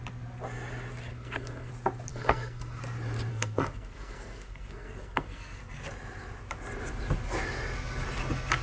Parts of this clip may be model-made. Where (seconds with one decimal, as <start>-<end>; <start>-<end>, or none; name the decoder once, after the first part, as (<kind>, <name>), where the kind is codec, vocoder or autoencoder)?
1.1-1.7 (codec, SNAC); 2.1-2.8; 3.3-5.6